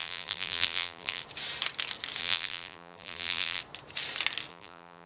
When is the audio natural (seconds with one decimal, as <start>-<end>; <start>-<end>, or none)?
1.2-2.2; 3.6-4.5